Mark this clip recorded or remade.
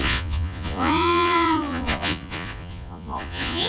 remade